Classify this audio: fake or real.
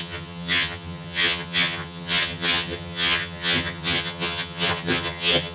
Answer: fake